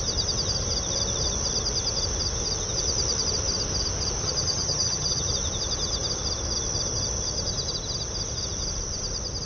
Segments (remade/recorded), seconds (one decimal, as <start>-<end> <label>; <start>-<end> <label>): 0.0-4.2 recorded; 4.2-5.3 remade; 5.3-9.5 recorded

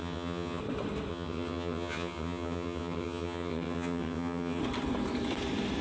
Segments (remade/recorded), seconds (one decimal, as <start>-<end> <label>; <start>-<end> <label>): 0.0-0.6 remade; 0.6-1.1 recorded; 1.1-4.6 remade; 4.6-5.8 recorded